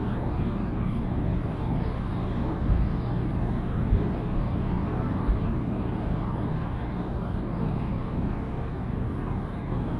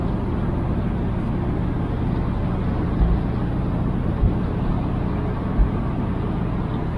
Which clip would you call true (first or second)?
second